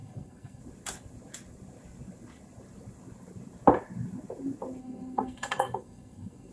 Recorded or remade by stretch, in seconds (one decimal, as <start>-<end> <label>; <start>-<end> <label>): 0.0-0.6 remade; 0.6-4.8 recorded; 4.8-6.5 remade

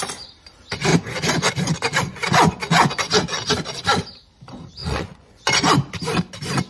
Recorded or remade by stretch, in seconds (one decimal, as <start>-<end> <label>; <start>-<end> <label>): 0.0-0.9 recorded; 0.9-1.5 remade; 1.5-2.1 recorded; 2.1-3.1 remade; 3.1-4.8 recorded; 4.8-5.7 remade; 5.7-6.7 recorded

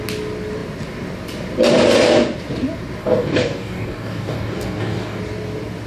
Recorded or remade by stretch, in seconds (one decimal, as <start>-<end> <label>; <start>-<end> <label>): 0.0-3.0 recorded; 3.0-5.2 remade; 5.2-5.9 recorded

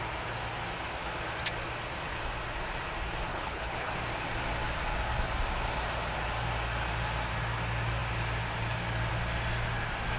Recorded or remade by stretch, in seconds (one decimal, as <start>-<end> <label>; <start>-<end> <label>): 0.0-3.3 recorded; 3.3-3.9 remade; 3.9-10.2 recorded